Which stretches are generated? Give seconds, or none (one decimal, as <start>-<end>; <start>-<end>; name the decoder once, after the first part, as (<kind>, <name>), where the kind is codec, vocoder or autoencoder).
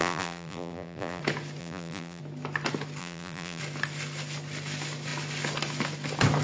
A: 0.0-1.2 (vocoder, BigVGAN v2); 1.6-2.2; 3.0-3.6